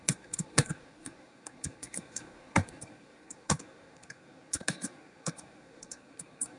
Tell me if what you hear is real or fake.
fake